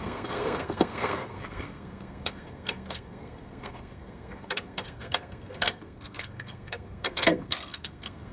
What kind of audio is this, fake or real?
fake